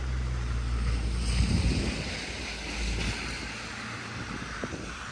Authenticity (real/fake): real